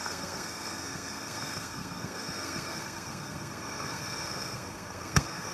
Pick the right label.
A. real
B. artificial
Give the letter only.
B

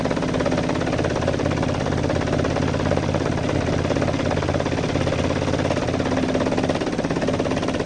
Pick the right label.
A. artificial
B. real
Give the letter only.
B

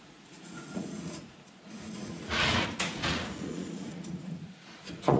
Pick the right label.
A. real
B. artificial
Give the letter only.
B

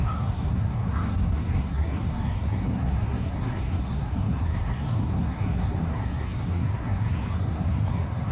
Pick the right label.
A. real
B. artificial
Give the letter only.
B